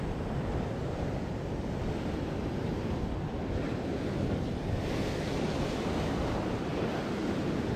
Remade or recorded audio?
recorded